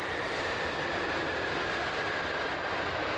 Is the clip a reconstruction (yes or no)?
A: yes